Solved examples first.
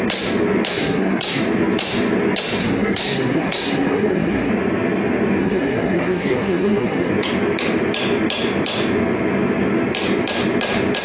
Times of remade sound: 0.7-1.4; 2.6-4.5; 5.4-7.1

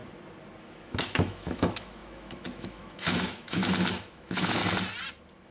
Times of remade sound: 0.6-3.6; 4.1-4.6

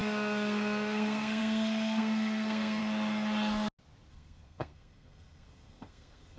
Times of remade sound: 0.0-2.8; 4.1-6.4

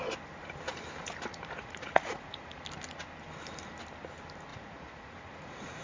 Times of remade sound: 1.3-2.6; 4.5-5.8

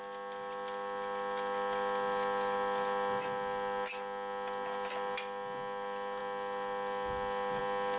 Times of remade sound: none

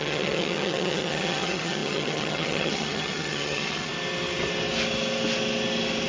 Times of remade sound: 0.0-3.9

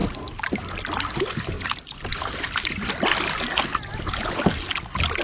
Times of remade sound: none

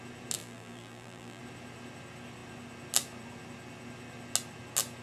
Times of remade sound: 0.4-1.4